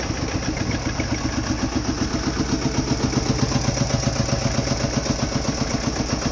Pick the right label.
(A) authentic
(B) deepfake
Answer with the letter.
A